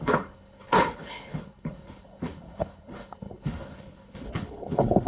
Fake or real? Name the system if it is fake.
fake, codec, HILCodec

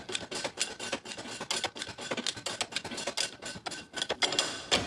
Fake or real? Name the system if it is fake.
real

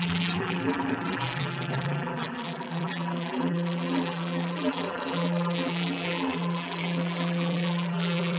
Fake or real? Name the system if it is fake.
fake, vocoder, BigVGAN v2